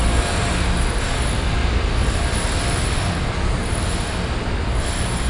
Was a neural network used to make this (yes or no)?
no